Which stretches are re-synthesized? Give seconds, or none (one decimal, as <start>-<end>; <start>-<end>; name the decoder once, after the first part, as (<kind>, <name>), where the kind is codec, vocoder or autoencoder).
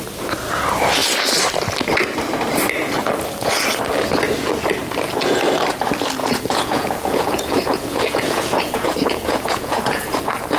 6.2-10.2 (vocoder, Vocos)